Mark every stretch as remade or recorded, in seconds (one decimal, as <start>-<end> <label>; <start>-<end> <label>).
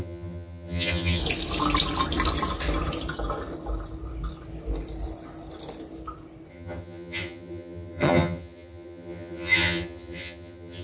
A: 0.0-1.2 remade; 1.2-6.5 recorded; 6.5-10.8 remade